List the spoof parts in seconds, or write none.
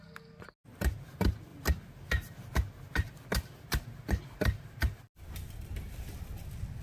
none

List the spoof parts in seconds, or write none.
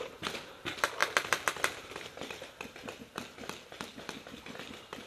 none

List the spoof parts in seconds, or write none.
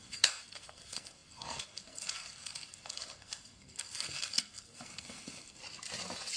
0.0-5.6 (codec, SNAC)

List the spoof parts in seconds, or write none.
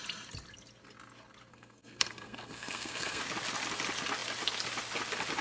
1.5-3.2 (codec, SNAC)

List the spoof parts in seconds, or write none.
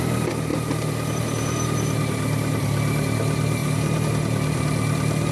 none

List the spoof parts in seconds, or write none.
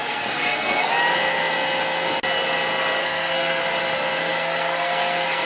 0.0-0.9 (codec, SNAC); 3.0-3.6; 4.2-5.5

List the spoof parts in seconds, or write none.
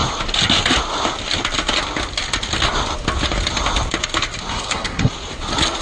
4.5-5.1 (codec, SNAC)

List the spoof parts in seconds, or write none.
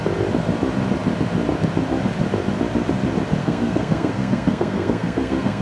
3.4-5.6 (codec, SNAC)